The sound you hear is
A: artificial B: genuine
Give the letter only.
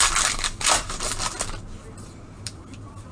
B